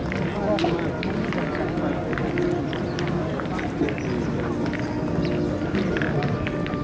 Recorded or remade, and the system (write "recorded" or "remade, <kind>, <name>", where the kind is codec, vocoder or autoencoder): recorded